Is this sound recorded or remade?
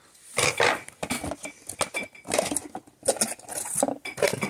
recorded